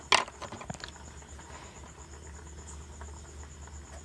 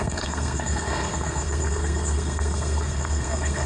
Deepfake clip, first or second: second